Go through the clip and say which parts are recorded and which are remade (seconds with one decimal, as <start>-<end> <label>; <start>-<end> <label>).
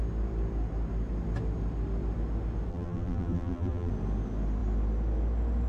0.0-2.7 recorded; 2.7-3.9 remade; 3.9-5.7 recorded